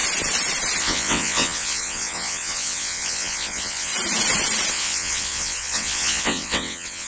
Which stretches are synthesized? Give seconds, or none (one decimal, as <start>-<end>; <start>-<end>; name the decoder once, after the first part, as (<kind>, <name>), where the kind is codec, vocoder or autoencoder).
0.8-3.9 (vocoder, WaveNeXt); 4.7-7.1